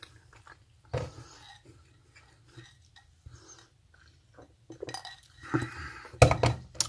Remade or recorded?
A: recorded